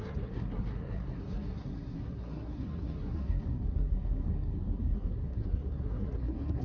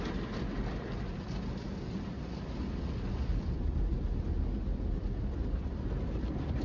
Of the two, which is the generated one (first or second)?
first